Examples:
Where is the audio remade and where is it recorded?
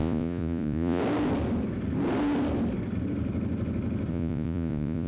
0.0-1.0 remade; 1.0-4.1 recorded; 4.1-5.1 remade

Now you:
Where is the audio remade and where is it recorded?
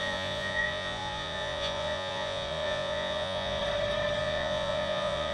0.0-3.6 remade; 3.6-4.2 recorded; 4.2-5.3 remade